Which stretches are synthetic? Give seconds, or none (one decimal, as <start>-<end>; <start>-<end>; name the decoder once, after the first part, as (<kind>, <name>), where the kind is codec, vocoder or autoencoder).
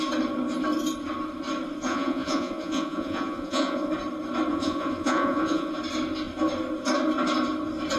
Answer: 1.9-3.9 (vocoder, Vocos); 4.5-5.7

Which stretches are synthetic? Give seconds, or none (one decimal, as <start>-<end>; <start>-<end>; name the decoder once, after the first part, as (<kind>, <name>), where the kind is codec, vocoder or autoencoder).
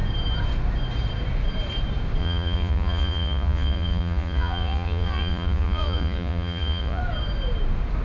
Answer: 2.2-7.0 (vocoder, Vocos)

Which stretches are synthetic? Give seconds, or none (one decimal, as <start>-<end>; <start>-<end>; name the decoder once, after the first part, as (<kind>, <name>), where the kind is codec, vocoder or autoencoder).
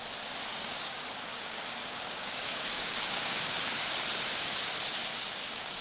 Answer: 0.5-4.0 (codec, DAC); 5.1-5.8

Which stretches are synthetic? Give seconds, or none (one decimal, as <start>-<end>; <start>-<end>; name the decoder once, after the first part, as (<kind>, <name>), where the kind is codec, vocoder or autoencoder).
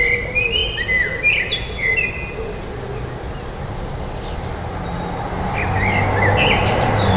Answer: none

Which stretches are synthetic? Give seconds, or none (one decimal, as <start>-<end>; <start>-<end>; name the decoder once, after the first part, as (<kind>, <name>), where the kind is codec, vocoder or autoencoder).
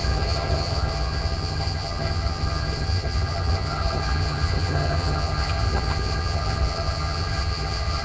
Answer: 0.0-8.0 (vocoder, HiFi-GAN)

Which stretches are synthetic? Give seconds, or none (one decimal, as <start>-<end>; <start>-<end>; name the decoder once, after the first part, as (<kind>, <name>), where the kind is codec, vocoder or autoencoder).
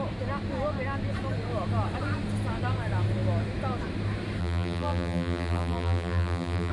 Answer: 4.4-6.7 (vocoder, BigVGAN v2)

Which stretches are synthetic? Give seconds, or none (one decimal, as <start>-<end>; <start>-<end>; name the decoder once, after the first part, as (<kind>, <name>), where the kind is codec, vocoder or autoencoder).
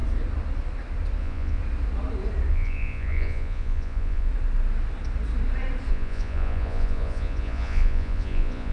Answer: 1.2-1.6 (vocoder, Vocos); 2.5-4.3; 5.9-8.7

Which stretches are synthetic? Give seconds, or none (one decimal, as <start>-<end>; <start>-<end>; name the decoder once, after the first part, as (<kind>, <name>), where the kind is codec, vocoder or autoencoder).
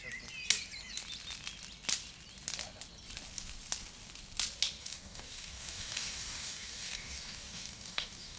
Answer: 4.8-8.4 (codec, DAC)